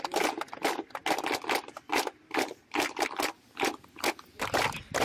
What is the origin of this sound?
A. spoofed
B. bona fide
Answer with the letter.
B